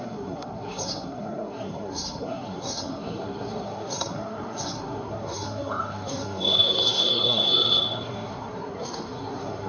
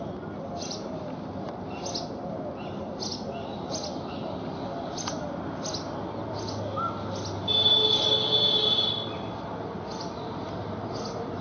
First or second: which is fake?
first